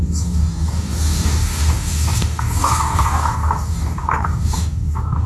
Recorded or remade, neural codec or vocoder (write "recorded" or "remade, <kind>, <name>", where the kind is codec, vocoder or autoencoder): remade, codec, DAC